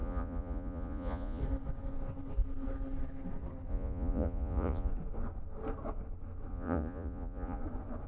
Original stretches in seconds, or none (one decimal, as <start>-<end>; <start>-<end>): 1.4-3.7; 4.9-6.5; 7.6-8.1